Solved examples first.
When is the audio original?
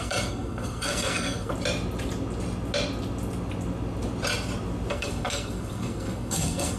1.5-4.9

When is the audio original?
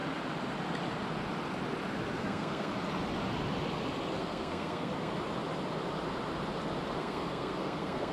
0.0-2.2; 2.7-4.2; 5.1-7.0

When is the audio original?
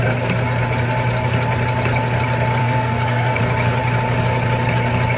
0.0-2.6; 3.4-5.2